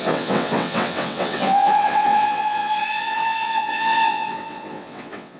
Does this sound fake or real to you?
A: fake